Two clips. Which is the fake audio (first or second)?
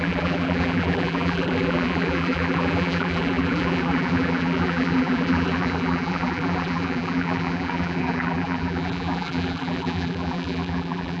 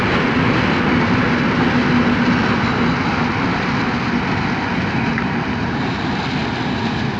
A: first